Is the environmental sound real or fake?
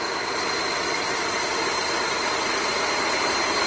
real